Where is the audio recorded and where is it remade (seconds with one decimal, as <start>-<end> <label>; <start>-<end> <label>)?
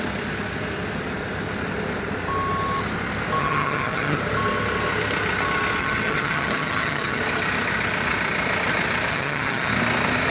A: 0.0-3.4 recorded; 3.4-4.2 remade; 4.2-5.8 recorded; 5.8-7.2 remade; 7.2-9.1 recorded; 9.1-9.7 remade; 9.7-10.3 recorded